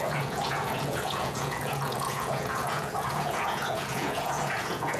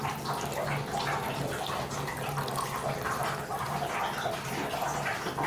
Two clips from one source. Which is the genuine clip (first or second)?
second